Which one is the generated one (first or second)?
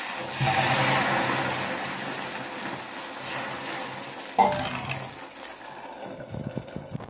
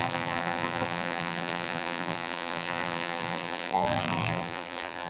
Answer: second